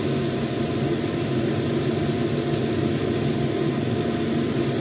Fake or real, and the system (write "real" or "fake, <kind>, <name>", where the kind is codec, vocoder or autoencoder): real